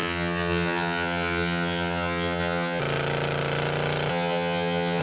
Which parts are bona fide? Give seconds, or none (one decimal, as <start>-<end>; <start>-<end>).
2.8-4.1